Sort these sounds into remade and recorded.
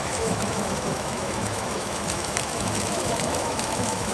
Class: remade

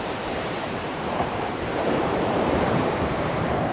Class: remade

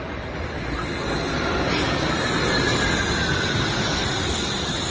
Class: recorded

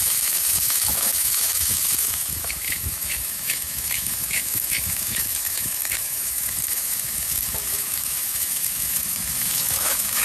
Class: remade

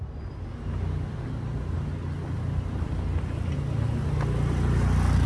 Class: recorded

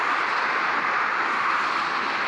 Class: recorded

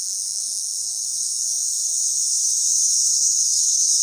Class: remade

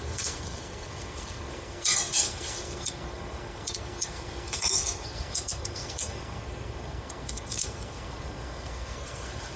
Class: remade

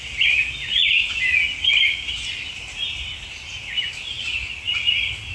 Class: recorded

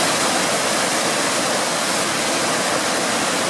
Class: recorded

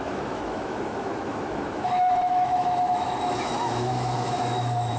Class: remade